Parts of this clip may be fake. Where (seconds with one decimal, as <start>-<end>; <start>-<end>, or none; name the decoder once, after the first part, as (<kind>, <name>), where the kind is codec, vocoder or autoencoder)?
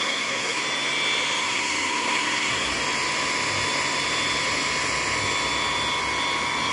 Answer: 0.0-0.6 (codec, SNAC); 1.4-2.8